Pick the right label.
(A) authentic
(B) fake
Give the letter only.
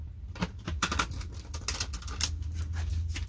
A